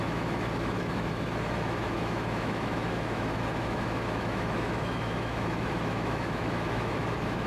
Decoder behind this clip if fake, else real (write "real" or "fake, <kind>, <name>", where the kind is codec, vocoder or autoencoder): fake, autoencoder, DAC-VAE